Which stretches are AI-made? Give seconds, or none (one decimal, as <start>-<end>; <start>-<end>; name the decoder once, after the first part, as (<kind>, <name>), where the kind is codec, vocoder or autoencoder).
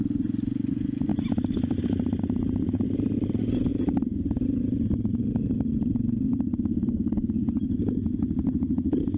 1.1-2.2 (vocoder, BigVGAN v2)